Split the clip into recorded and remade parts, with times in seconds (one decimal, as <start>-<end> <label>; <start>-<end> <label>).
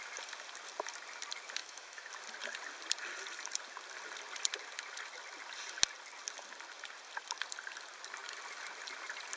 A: 0.0-1.6 recorded; 1.6-2.1 remade; 2.1-9.4 recorded